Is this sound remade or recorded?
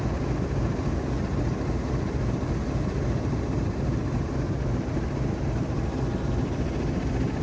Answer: recorded